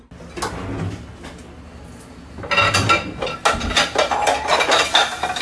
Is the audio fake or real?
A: real